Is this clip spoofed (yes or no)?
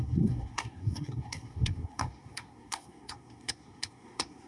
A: yes